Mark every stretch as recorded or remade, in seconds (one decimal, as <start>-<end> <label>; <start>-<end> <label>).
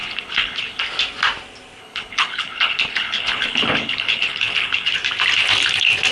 0.0-0.8 remade; 0.8-1.8 recorded; 1.8-4.9 remade; 4.9-6.1 recorded